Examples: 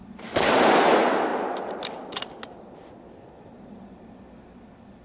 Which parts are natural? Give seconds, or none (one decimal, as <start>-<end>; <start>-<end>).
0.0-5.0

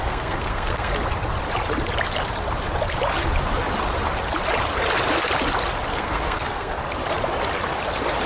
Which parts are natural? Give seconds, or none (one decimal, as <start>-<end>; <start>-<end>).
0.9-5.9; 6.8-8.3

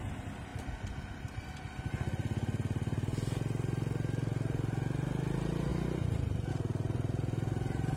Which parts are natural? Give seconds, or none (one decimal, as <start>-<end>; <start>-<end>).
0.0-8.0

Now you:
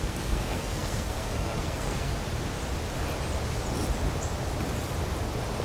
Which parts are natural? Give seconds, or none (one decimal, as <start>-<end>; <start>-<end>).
2.1-5.6